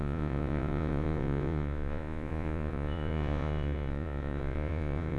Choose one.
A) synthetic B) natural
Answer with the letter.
A